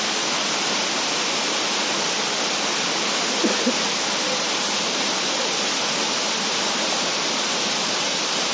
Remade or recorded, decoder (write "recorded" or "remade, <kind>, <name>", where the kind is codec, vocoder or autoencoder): recorded